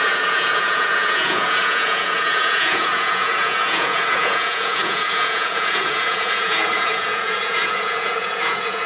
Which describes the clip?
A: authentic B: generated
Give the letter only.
B